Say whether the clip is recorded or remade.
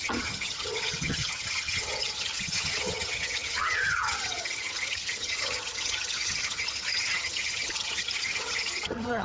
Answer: remade